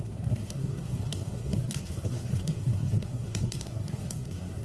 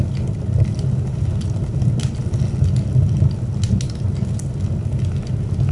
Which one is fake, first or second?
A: first